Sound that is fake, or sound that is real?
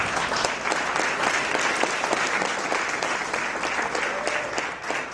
real